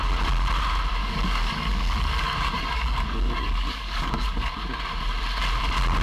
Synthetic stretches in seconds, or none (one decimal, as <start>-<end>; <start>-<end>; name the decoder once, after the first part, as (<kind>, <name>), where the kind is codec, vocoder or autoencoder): 1.0-4.5 (codec, DAC)